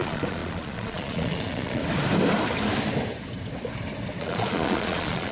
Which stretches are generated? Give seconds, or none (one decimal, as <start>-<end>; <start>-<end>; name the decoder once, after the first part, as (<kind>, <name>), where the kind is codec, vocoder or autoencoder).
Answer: 0.0-1.8 (vocoder, Vocos); 4.2-5.3